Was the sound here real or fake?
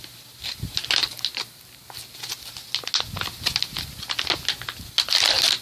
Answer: real